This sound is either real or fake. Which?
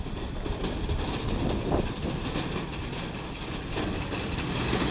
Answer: fake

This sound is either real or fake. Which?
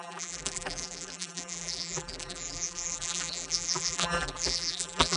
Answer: fake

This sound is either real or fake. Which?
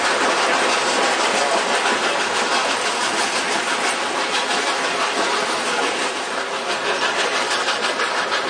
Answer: real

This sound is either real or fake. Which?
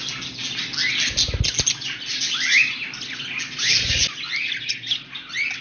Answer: real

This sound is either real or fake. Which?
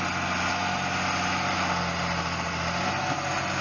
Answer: real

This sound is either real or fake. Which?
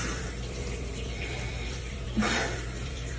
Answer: fake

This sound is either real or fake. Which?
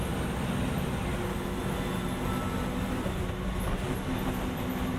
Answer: real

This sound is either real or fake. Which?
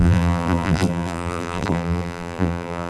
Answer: fake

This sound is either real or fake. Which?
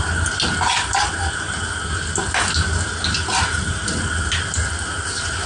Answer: real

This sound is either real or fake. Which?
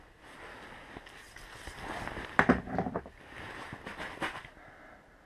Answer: real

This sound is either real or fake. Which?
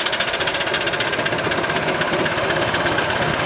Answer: real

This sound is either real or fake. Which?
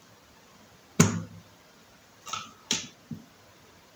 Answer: real